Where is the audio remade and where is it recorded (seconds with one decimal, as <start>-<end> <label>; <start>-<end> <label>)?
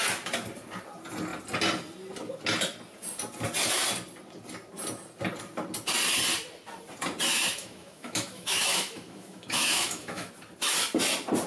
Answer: 0.0-7.3 recorded; 7.3-10.3 remade; 10.3-11.5 recorded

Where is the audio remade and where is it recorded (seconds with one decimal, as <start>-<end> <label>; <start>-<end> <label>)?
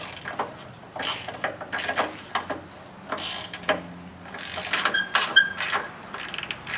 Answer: 0.0-6.8 recorded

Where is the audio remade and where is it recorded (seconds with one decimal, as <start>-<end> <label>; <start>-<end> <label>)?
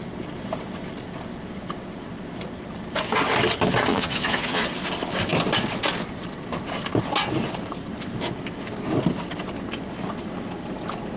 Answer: 0.0-3.9 recorded; 3.9-4.7 remade; 4.7-11.2 recorded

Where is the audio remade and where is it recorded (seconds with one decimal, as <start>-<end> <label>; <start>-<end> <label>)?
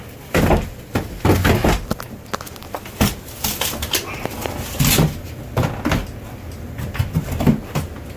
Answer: 0.0-8.2 recorded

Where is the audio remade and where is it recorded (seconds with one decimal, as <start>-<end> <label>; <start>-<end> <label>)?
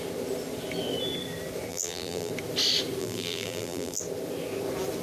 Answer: 0.0-1.7 recorded; 1.7-2.3 remade; 2.3-3.0 recorded; 3.0-4.0 remade; 4.0-5.0 recorded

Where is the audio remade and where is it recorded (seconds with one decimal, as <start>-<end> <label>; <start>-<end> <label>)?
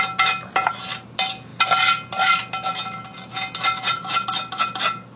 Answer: 0.0-5.2 recorded